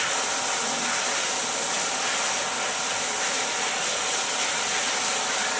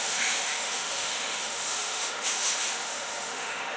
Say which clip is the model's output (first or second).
second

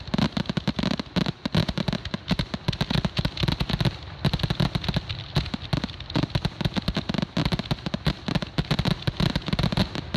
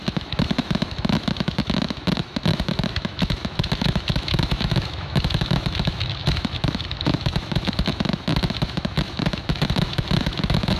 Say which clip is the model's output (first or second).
second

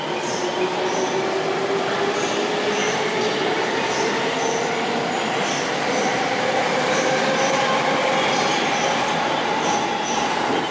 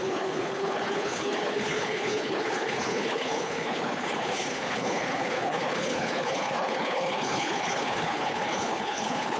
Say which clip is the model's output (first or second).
second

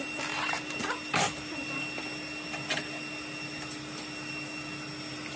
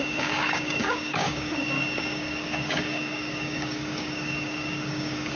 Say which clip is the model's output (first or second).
second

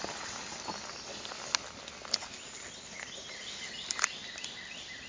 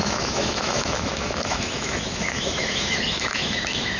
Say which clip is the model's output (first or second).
second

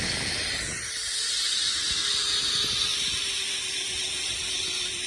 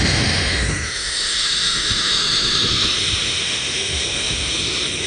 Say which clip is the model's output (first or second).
second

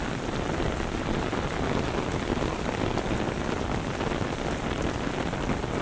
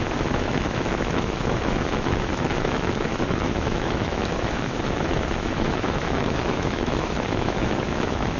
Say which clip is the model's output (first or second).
second